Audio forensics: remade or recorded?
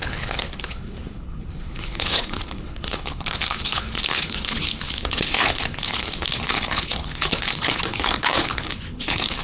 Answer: remade